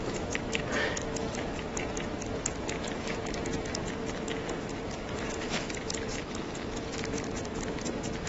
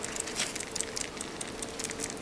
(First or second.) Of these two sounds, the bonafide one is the second